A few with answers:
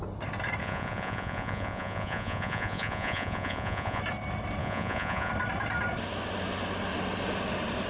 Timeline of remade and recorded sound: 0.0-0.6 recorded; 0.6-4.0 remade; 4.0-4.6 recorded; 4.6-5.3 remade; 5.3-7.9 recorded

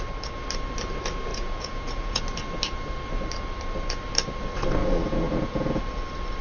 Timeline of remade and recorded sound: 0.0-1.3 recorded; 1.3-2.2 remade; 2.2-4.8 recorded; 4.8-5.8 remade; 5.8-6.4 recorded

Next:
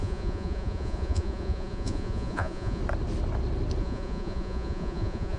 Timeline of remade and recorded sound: 0.0-2.8 remade; 2.8-3.8 recorded; 3.8-5.4 remade

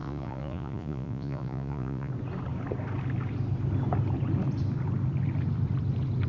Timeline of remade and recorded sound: 0.0-2.1 remade; 2.1-6.3 recorded

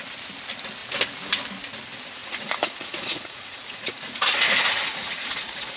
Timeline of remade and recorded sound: 0.0-2.2 recorded; 2.2-5.8 remade

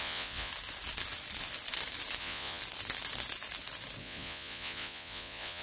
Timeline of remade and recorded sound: 0.0-0.5 remade; 0.5-2.2 recorded; 2.2-2.6 remade; 2.6-4.0 recorded; 4.0-5.6 remade

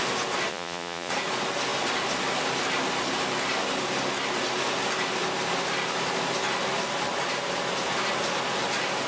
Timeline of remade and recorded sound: 0.0-0.5 recorded; 0.5-1.1 remade; 1.1-9.1 recorded